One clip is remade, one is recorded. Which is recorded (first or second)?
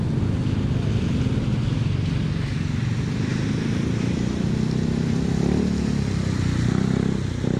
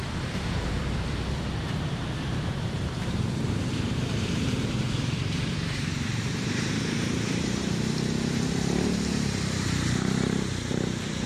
first